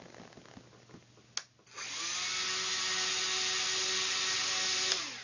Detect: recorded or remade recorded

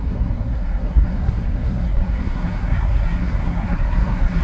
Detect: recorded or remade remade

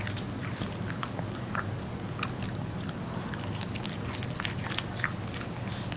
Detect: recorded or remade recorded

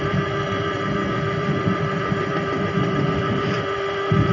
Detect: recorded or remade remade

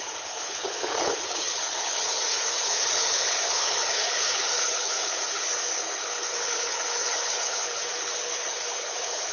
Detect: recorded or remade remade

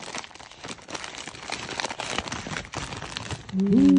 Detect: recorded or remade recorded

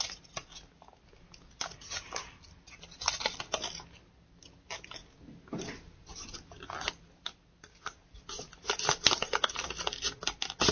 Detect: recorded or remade recorded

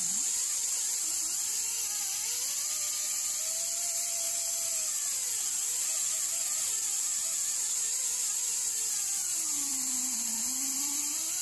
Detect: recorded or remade recorded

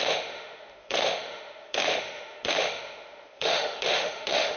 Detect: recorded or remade remade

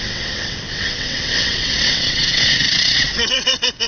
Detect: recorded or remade remade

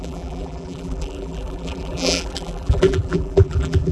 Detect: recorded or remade remade